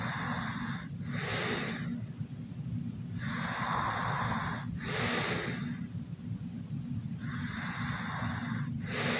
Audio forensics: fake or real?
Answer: real